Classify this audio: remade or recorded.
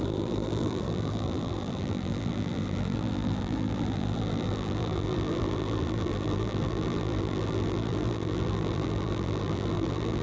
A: remade